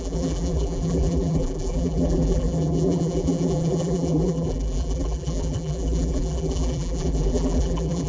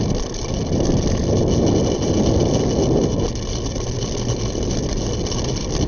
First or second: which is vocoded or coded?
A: first